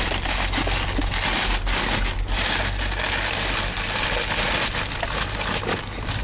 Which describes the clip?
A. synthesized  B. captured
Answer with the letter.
B